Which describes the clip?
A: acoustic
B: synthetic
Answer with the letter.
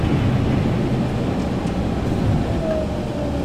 A